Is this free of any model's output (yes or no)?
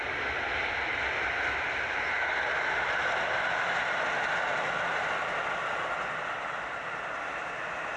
yes